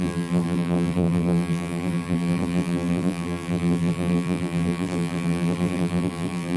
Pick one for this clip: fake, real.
fake